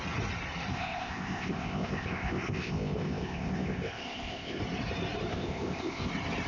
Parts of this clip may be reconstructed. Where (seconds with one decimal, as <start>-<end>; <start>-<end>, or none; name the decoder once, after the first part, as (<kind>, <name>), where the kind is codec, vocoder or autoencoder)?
0.7-4.6 (codec, ZipCodec); 5.3-6.1